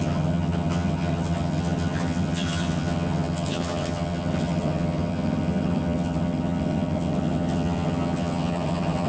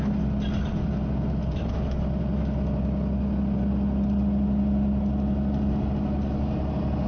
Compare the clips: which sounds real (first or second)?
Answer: second